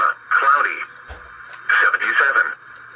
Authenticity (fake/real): real